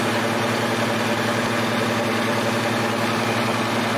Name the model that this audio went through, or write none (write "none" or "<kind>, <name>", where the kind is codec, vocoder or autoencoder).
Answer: none